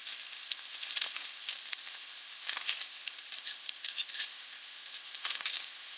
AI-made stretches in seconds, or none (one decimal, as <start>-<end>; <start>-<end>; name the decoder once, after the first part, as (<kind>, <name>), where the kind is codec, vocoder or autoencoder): 0.0-6.0 (codec, ZipCodec)

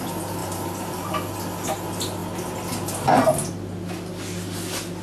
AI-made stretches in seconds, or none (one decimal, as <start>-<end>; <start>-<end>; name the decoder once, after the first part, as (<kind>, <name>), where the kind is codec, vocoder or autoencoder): 0.4-1.1 (vocoder, BigVGAN v2)